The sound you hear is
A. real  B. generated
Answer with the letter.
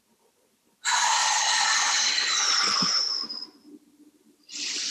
B